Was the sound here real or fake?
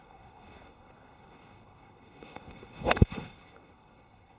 fake